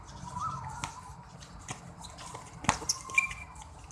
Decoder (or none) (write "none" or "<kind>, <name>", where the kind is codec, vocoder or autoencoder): none